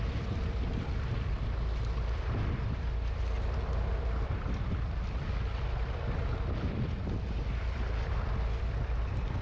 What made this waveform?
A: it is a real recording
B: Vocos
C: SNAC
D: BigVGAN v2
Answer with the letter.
D